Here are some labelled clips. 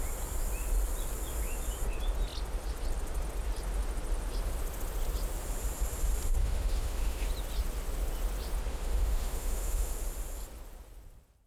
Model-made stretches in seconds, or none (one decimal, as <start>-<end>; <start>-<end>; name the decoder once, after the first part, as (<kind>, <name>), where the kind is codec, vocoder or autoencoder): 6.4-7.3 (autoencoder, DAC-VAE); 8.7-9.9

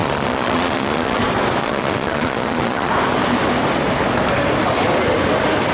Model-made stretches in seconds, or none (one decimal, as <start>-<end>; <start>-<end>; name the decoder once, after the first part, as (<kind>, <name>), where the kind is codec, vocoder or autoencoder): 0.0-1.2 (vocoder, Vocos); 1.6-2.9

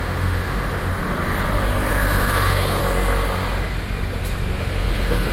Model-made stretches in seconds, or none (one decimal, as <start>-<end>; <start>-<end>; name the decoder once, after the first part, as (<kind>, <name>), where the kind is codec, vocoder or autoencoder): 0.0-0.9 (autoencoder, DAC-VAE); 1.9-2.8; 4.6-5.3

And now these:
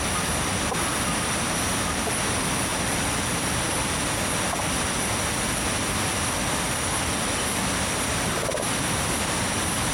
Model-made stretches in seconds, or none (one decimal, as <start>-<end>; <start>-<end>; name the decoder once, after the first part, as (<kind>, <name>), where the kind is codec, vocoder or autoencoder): 2.7-3.7 (vocoder, BigVGAN v2)

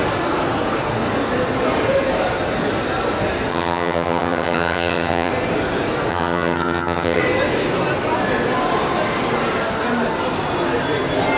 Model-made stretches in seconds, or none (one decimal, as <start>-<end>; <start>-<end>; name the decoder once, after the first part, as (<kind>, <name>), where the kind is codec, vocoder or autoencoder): 3.5-5.3 (vocoder, HiFi-GAN); 6.1-7.2

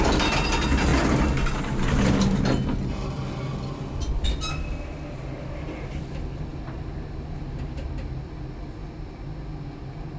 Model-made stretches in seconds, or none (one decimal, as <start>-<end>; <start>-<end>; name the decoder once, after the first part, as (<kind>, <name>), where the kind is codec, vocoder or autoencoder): none